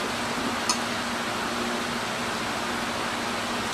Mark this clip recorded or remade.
recorded